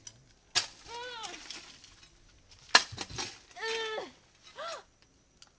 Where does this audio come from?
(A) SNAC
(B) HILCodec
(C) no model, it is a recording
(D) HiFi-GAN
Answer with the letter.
C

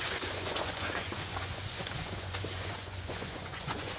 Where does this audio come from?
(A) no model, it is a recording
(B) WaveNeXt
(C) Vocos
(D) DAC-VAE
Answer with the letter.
C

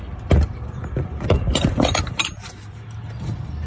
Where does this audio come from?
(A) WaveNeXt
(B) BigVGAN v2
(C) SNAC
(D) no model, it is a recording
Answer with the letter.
B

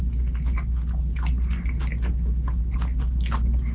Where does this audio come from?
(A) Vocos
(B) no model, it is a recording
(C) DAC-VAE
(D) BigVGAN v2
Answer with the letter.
B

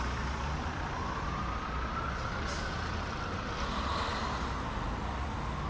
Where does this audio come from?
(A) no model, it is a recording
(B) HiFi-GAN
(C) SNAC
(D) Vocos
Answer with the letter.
A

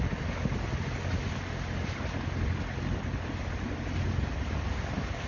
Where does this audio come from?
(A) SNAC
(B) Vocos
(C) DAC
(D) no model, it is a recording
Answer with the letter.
D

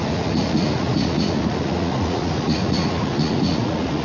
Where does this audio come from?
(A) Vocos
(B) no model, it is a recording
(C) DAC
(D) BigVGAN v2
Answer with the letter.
A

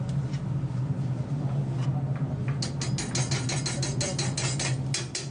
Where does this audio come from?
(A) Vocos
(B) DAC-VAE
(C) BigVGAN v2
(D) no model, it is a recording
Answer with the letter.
D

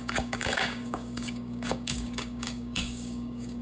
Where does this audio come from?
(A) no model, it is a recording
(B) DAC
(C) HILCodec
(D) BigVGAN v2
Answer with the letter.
B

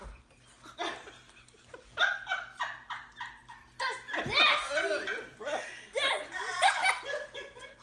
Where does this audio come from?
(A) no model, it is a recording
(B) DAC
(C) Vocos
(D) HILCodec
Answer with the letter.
A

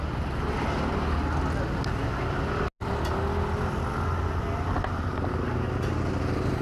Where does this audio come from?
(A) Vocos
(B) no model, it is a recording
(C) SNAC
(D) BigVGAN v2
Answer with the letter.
B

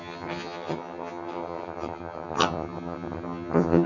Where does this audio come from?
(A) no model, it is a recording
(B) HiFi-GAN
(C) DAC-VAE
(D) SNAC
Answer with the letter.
B